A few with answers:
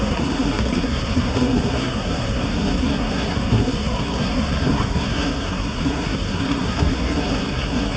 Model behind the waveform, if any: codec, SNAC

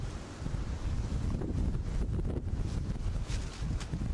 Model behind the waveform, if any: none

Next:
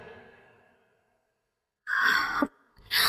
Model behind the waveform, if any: codec, SNAC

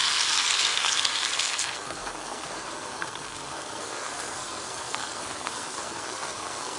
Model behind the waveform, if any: codec, SNAC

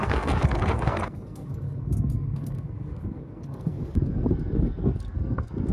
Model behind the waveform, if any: codec, SNAC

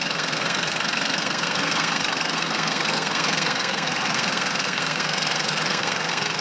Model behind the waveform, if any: codec, SNAC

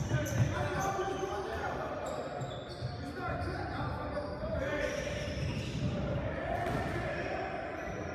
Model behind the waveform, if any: none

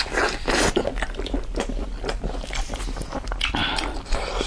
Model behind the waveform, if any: none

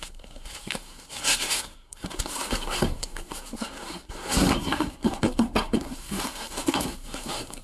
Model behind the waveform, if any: codec, SNAC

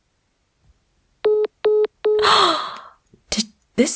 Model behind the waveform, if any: none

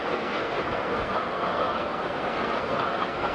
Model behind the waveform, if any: codec, SNAC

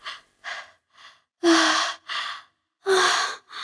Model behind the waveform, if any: none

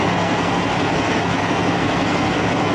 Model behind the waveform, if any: codec, SNAC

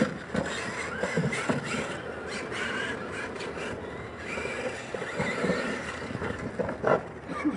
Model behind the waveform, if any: none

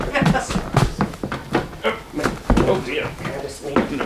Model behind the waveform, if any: none